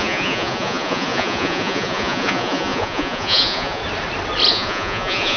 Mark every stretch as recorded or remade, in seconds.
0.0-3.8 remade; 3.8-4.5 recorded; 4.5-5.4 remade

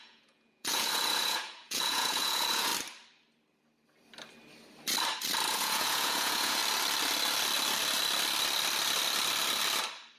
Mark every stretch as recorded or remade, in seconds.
0.0-2.7 remade; 2.7-5.5 recorded; 5.5-6.6 remade; 6.6-10.2 recorded

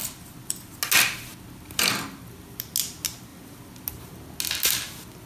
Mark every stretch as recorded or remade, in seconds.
0.0-5.3 recorded

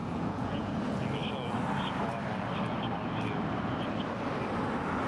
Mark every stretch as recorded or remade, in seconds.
0.0-0.7 remade; 0.7-5.1 recorded